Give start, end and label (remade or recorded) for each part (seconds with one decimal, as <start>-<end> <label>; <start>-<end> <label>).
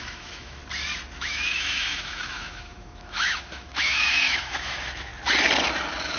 0.0-0.6 remade; 0.6-1.2 recorded; 1.2-5.1 remade; 5.1-6.2 recorded